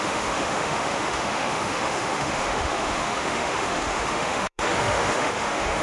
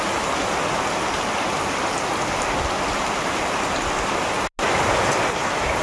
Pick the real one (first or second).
second